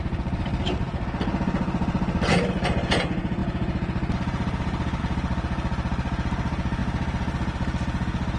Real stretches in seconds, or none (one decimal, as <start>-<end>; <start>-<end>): none